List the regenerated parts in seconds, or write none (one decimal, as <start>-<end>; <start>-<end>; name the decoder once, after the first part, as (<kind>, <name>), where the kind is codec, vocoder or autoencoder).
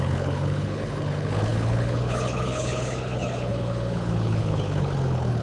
0.0-5.4 (codec, HILCodec)